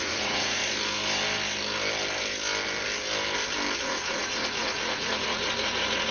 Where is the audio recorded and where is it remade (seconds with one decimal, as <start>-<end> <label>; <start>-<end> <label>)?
0.0-0.6 remade; 0.6-3.8 recorded; 3.8-6.1 remade